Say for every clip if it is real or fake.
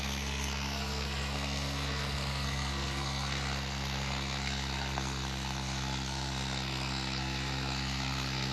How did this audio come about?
fake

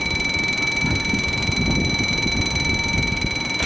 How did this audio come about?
real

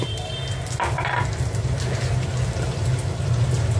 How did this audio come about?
real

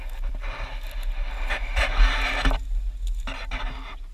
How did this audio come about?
real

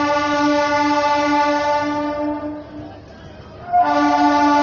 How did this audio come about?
real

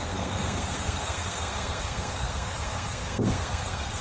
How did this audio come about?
fake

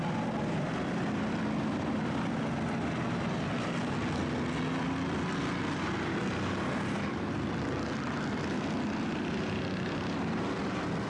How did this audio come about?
real